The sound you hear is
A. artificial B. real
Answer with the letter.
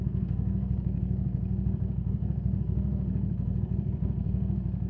A